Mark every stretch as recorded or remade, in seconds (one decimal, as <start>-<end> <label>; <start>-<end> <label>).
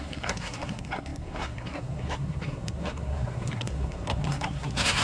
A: 0.0-5.0 remade